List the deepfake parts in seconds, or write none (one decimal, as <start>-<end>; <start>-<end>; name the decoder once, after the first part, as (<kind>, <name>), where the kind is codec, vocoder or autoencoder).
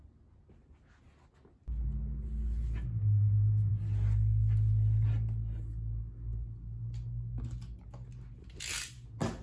none